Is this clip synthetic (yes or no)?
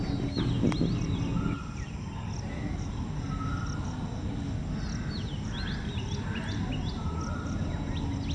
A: no